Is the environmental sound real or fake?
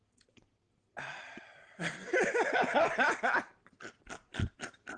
fake